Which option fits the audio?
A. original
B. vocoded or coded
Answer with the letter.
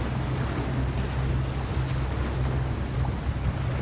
A